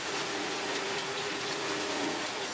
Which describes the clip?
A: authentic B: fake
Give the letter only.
B